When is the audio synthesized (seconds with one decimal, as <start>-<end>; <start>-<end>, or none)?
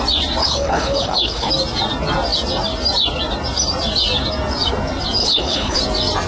0.4-1.5; 5.2-5.8